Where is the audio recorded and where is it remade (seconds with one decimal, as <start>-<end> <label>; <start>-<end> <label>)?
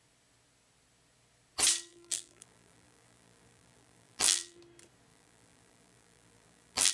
0.0-1.9 recorded; 1.9-4.6 remade; 4.6-5.1 recorded; 5.1-6.9 remade